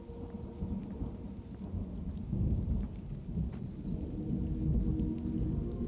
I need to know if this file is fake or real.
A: real